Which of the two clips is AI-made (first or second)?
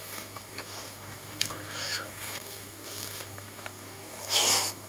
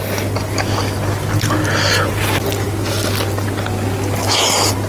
first